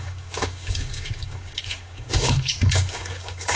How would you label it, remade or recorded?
remade